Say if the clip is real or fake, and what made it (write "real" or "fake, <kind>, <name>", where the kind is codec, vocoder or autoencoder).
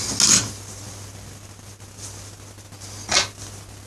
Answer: real